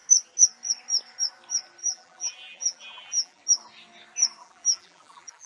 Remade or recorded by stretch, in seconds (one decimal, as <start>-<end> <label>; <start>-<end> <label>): 0.0-1.8 recorded; 1.8-3.4 remade; 3.4-4.4 recorded; 4.4-5.5 remade

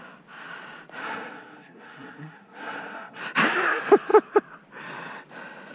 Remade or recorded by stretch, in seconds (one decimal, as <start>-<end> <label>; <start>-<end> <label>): 0.0-1.0 recorded; 1.0-3.2 remade; 3.2-5.7 recorded

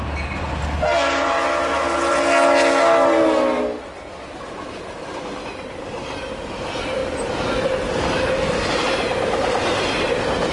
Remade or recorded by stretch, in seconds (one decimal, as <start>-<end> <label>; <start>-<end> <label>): 0.0-10.5 recorded